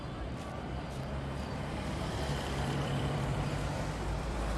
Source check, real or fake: fake